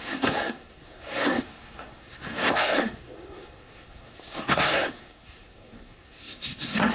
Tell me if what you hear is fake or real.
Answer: fake